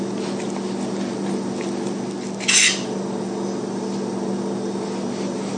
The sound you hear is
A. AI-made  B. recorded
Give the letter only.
B